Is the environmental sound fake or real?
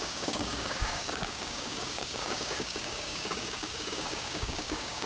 fake